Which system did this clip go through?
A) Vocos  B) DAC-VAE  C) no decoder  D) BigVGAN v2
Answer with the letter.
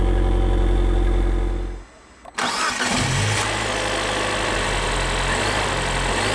C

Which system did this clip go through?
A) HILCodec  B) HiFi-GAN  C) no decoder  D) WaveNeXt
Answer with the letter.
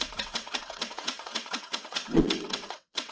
D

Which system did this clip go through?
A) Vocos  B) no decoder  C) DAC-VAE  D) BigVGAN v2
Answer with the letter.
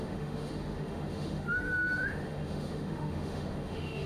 C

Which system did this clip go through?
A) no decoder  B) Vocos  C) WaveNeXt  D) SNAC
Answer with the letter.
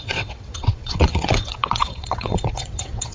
C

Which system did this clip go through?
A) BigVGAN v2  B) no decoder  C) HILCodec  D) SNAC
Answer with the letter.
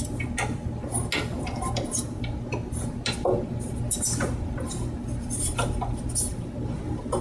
B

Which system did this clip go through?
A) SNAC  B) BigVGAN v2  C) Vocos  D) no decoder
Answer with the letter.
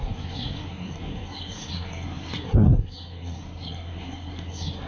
A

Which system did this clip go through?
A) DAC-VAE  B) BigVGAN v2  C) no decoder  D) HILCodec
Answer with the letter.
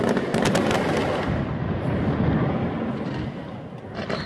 C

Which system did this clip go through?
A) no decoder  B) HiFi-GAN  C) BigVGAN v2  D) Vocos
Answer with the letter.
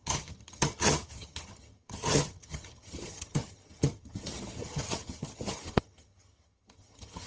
B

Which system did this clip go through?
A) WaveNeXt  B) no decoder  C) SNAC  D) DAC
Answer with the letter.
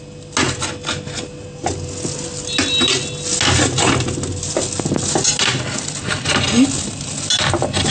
B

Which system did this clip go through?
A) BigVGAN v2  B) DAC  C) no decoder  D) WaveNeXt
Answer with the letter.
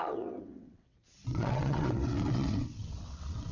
D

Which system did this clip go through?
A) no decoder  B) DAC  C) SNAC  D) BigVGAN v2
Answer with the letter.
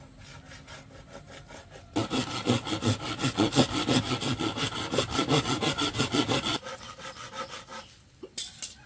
A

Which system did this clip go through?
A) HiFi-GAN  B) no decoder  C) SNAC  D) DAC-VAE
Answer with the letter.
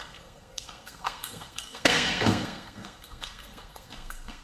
C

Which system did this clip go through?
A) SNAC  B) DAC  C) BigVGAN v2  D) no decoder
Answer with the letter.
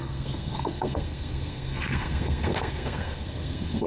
A